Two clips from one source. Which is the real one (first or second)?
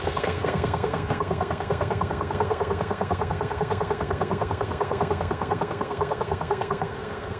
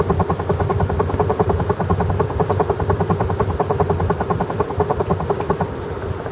second